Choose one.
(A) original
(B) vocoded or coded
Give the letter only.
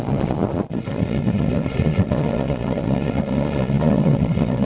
B